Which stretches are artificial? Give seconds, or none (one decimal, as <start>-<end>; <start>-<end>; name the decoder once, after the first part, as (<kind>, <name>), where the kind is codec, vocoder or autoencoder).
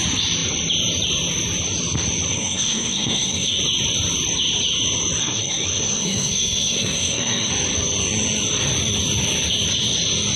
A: 2.3-3.6 (codec, SNAC); 5.2-7.5